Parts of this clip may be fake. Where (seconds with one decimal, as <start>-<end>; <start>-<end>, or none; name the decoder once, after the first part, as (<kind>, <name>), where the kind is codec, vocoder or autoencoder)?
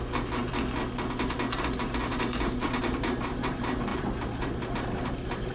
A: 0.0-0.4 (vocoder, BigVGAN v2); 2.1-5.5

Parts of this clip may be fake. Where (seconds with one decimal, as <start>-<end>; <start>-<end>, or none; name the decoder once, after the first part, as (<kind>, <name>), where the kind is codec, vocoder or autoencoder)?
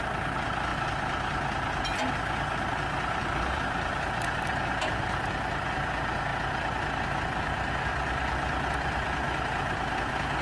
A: 4.5-5.4 (vocoder, BigVGAN v2)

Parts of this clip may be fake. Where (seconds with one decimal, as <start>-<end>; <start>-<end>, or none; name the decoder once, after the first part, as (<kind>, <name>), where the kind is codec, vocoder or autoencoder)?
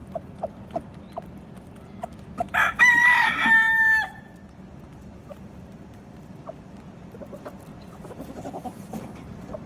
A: 0.0-3.3 (vocoder, BigVGAN v2); 7.7-9.7